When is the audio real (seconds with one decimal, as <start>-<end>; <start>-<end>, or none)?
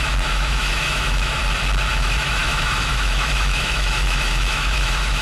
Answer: 1.4-1.9